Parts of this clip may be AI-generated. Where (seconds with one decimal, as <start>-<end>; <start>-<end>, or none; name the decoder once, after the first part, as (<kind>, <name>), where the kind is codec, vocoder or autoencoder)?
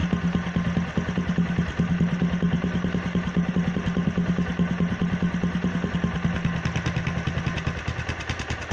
none